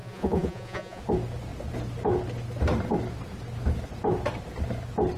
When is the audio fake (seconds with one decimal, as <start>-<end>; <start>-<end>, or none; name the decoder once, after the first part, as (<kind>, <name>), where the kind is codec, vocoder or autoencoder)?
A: 0.0-1.0 (vocoder, Vocos)